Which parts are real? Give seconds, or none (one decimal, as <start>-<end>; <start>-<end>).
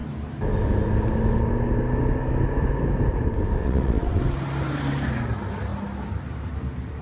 0.0-3.6; 4.2-7.0